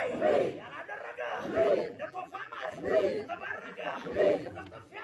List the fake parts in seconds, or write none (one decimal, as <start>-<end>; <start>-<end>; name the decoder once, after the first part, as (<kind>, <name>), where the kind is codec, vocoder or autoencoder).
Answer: 1.6-4.6 (vocoder, BigVGAN v2)